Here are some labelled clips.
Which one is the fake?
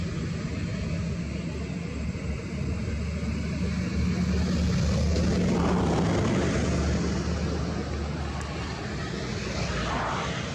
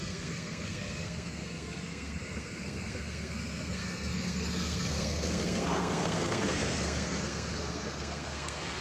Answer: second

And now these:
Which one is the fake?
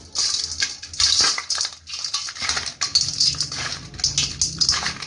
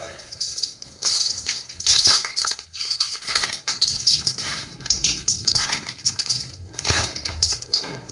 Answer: second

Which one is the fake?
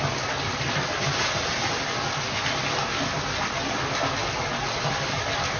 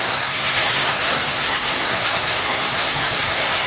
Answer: second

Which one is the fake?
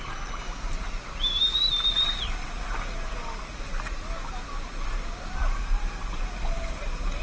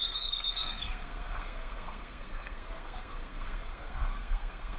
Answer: second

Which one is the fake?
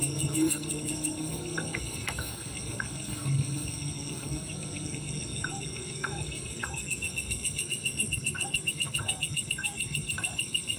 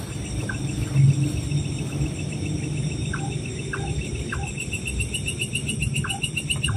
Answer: first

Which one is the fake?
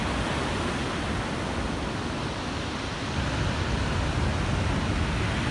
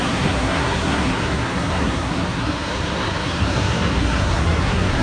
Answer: second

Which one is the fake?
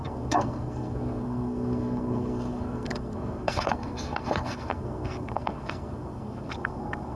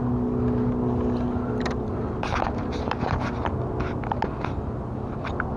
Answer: first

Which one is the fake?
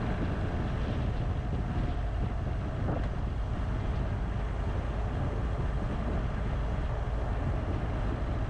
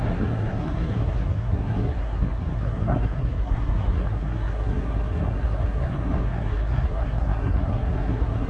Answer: second